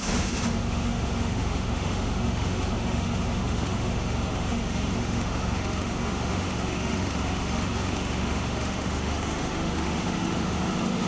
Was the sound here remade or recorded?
remade